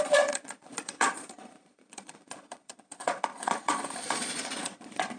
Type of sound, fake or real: fake